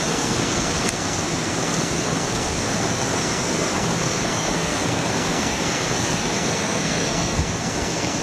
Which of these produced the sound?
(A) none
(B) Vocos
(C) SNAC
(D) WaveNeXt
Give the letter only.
C